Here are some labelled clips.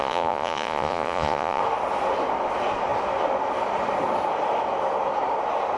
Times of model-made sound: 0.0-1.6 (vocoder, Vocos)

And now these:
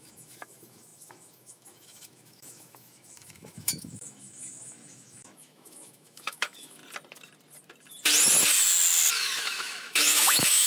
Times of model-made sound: 0.0-6.8 (autoencoder, DAC-VAE); 9.1-10.7

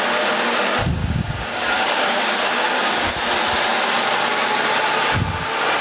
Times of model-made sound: 1.0-3.1 (codec, DAC)